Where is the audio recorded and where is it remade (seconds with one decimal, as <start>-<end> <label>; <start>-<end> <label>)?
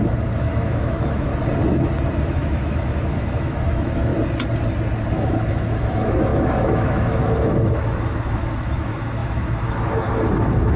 0.0-1.3 remade; 1.3-2.2 recorded; 2.2-4.1 remade; 4.1-5.1 recorded; 5.1-10.8 remade